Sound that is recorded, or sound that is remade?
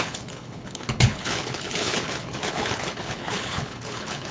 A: remade